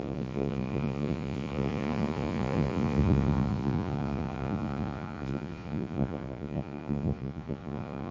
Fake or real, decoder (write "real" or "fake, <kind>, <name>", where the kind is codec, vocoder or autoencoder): fake, vocoder, Vocos